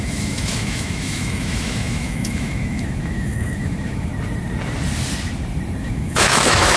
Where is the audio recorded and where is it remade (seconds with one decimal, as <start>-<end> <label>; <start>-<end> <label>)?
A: 0.0-4.1 remade; 4.1-5.8 recorded; 5.8-6.8 remade